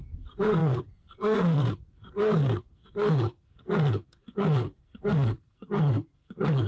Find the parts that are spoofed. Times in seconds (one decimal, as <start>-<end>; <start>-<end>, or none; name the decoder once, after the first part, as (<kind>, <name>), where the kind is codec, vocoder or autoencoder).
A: 0.0-6.7 (codec, SNAC)